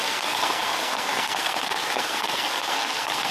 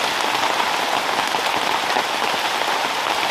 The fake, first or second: first